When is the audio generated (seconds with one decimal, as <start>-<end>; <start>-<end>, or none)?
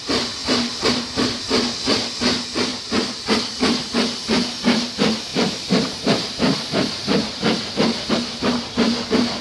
0.4-1.4; 5.3-8.1